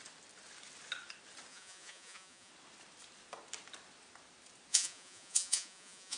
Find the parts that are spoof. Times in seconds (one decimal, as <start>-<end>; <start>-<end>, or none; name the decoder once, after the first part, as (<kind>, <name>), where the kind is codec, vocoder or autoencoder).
1.5-2.5 (vocoder, Vocos); 4.7-6.2

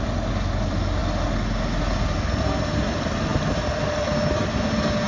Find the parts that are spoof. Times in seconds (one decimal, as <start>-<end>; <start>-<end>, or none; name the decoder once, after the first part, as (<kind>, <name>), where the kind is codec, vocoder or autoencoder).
none

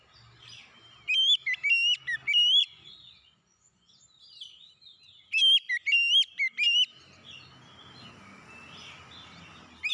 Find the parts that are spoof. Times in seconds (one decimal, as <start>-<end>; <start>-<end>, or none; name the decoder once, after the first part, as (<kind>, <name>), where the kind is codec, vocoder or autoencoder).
2.6-3.9 (vocoder, Vocos)

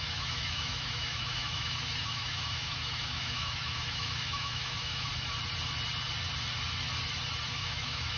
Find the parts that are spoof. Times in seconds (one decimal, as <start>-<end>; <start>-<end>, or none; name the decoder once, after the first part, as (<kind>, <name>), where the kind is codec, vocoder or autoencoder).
0.0-5.1 (autoencoder, DAC-VAE); 7.5-8.2

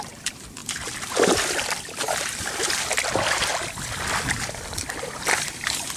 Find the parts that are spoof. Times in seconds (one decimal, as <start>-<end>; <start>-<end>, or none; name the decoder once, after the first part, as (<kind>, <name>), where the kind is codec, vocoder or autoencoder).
0.0-3.5 (vocoder, BigVGAN v2); 4.3-6.0

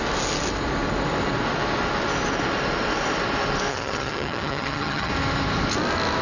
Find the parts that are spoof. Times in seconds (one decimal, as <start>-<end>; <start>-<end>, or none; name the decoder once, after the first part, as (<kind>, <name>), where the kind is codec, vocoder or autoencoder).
3.7-5.1 (vocoder, HiFi-GAN)